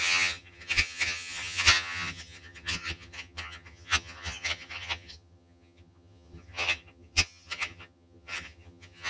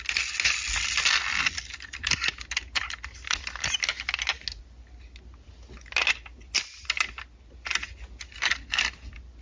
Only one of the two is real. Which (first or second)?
second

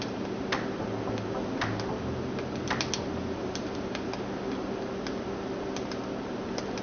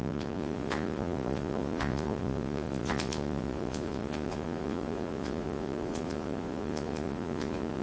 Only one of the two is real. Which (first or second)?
first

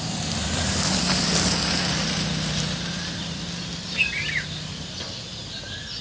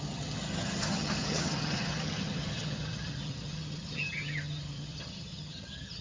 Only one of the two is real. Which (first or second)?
first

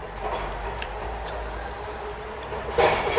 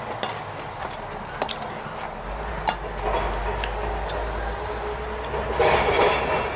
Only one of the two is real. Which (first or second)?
second